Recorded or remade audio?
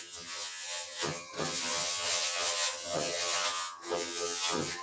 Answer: remade